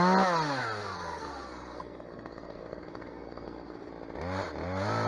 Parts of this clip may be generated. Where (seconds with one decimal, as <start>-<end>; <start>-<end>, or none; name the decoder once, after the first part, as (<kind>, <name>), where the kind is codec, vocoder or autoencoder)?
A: 0.8-3.9 (codec, SNAC)